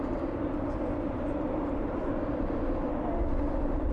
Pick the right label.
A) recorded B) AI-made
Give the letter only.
A